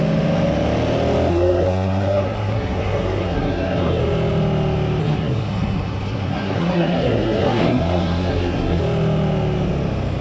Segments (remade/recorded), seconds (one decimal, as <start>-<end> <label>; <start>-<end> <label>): 0.0-1.3 recorded; 1.3-4.0 remade; 4.0-5.0 recorded; 5.0-8.8 remade; 8.8-10.2 recorded